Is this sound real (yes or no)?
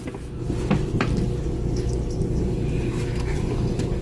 yes